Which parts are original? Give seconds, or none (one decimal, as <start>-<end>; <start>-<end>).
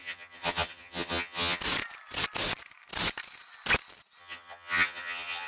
1.6-4.2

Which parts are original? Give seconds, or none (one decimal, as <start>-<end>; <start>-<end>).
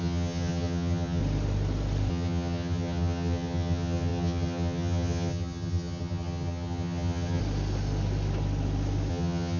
1.2-2.1; 7.4-9.1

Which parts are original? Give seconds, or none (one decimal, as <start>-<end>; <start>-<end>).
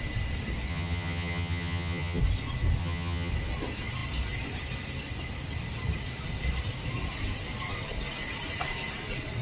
0.0-0.7; 2.2-2.8; 3.3-9.4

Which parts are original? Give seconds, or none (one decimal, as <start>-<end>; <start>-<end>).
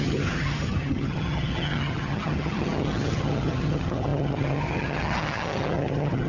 none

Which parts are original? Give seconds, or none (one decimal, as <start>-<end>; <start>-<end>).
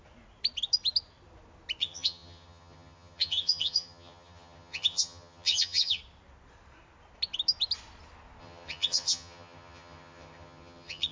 0.0-1.8; 6.0-8.4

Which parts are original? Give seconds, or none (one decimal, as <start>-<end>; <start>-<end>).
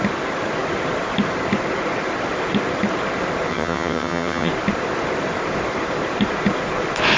0.0-3.5; 4.5-7.2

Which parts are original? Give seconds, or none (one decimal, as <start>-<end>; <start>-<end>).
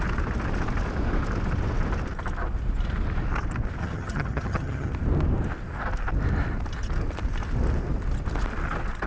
0.0-3.8; 4.9-9.1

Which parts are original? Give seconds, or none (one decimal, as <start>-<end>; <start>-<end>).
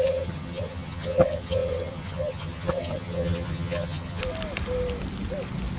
4.2-5.8